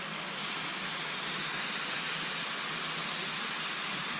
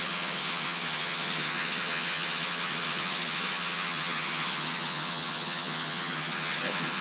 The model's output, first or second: second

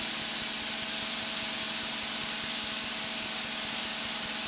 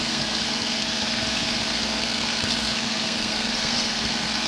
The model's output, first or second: second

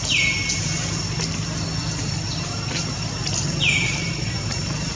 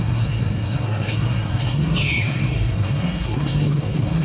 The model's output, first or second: second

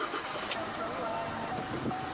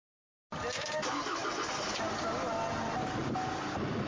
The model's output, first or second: first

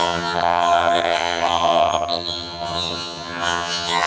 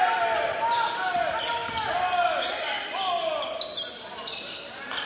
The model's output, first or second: first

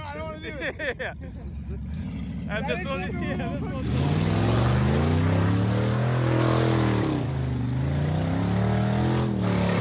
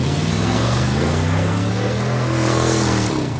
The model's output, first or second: second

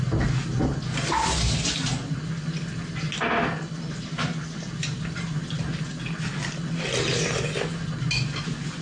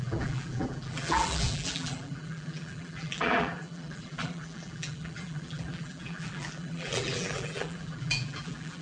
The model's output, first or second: second